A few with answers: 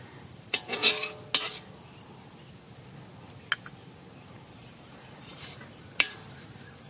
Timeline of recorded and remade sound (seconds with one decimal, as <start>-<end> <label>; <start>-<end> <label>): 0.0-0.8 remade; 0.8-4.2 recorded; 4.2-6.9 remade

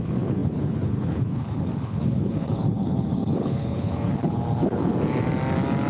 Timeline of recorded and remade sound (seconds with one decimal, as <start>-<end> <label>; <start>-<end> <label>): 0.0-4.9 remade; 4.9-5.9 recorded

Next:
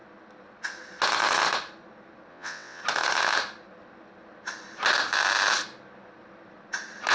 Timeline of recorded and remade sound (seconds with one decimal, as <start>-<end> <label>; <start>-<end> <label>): 0.0-2.3 recorded; 2.3-2.8 remade; 2.8-7.1 recorded